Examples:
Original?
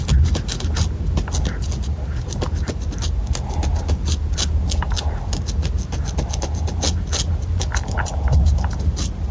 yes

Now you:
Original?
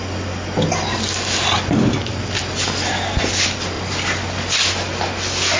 yes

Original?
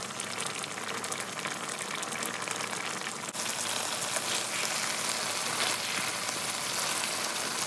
yes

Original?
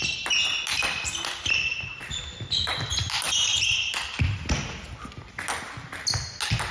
yes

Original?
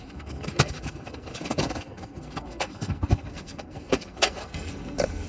no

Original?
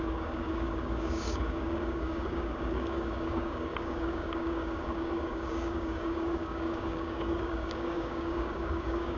no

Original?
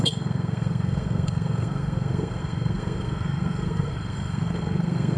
no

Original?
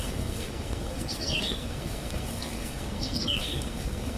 no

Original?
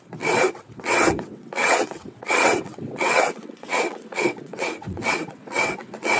no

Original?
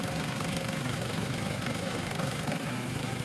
no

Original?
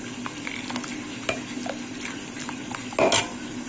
yes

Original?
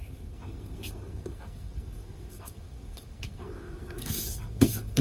no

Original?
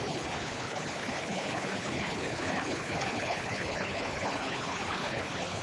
no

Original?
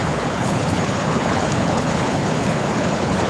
no